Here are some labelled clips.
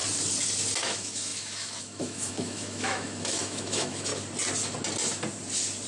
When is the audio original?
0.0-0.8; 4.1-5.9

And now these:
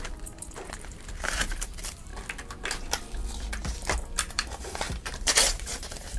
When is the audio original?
2.1-4.3

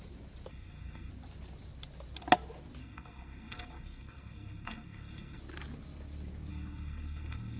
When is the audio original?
0.0-0.5; 1.1-2.8; 5.4-6.5

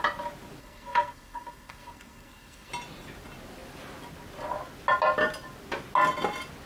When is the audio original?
0.0-0.6; 2.7-6.7

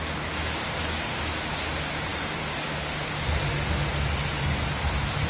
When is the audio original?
0.0-5.3